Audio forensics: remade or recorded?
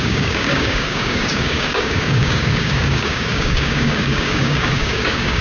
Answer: remade